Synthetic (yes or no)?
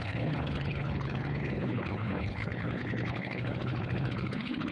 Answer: yes